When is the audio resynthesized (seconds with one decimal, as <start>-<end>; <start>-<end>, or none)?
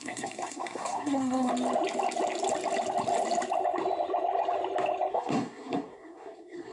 0.0-1.5; 5.1-6.7